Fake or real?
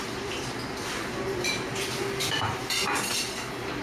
fake